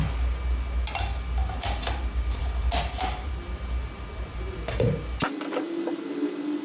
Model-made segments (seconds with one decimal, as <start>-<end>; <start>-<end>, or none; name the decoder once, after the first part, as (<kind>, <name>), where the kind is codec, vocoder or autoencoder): none

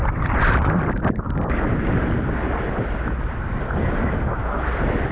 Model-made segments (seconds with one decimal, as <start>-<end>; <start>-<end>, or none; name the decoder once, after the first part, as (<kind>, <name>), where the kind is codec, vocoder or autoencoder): none

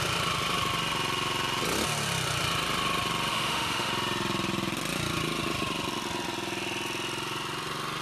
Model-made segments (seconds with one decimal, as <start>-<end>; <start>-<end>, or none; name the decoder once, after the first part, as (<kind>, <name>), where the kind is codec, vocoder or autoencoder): 3.3-3.9 (autoencoder, DAC-VAE)

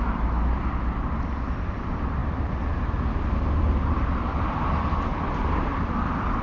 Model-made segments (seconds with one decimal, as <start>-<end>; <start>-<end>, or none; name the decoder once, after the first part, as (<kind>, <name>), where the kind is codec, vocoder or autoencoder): none

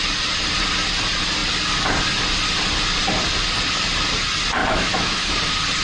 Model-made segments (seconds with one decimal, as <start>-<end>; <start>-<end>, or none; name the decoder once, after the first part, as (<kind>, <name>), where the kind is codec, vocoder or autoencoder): 4.6-5.3 (autoencoder, DAC-VAE)

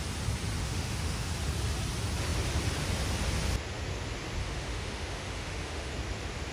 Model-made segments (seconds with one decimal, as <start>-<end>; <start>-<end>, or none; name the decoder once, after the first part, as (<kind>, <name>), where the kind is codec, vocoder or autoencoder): 0.6-1.3 (autoencoder, DAC-VAE); 4.4-5.9

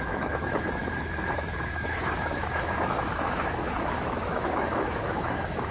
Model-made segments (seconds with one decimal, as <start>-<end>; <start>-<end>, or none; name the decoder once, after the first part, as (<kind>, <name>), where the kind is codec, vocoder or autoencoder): 0.0-5.7 (autoencoder, DAC-VAE)